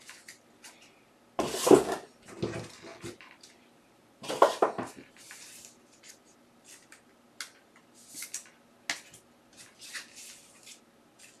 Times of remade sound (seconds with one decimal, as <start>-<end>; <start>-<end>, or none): 2.9-5.6